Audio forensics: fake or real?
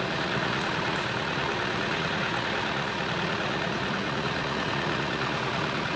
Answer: fake